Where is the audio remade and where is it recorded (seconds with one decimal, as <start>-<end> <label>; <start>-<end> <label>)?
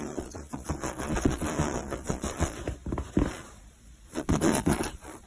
0.0-2.6 remade; 2.6-3.3 recorded; 3.3-5.3 remade